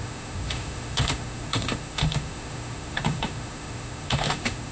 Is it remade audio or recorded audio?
remade